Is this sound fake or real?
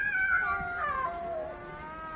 real